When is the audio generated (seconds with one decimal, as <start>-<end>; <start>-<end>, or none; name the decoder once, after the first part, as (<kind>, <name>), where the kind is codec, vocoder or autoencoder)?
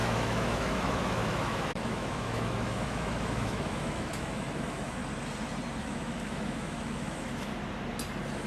0.0-5.0 (autoencoder, DAC-VAE); 5.8-7.5